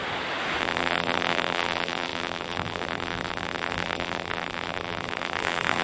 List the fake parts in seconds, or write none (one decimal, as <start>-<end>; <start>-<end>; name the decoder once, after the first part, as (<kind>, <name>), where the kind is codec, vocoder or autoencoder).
0.6-5.8 (vocoder, BigVGAN v2)